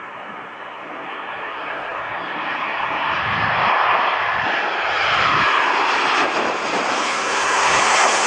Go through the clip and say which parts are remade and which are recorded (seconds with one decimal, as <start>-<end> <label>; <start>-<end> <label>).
0.0-3.2 remade; 3.2-6.9 recorded; 6.9-8.3 remade

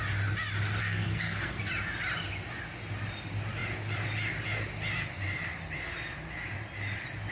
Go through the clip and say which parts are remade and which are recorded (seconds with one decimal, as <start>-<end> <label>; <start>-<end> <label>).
0.0-0.8 recorded; 0.8-1.7 remade; 1.7-7.3 recorded

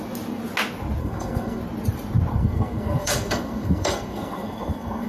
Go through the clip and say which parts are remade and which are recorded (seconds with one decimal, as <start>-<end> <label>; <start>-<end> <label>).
0.0-1.0 recorded; 1.0-1.6 remade; 1.6-2.3 recorded; 2.3-5.1 remade

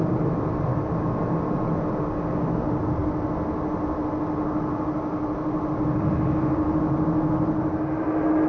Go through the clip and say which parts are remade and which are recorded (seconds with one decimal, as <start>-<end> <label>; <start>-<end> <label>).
0.0-8.5 recorded

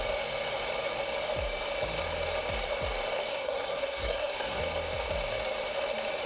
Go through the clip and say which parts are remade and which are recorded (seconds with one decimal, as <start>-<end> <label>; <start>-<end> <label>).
0.0-3.3 recorded; 3.3-4.6 remade; 4.6-6.3 recorded

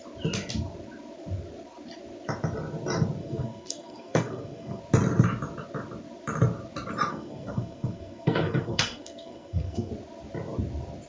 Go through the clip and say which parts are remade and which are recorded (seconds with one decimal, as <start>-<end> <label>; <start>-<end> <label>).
0.0-3.2 recorded; 3.2-4.8 remade; 4.8-7.1 recorded; 7.1-9.9 remade; 9.9-11.1 recorded

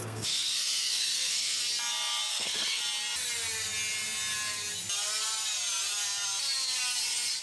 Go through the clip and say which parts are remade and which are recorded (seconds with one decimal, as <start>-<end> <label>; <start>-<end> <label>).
0.0-1.6 remade; 1.6-2.3 recorded; 2.3-2.8 remade; 2.8-7.4 recorded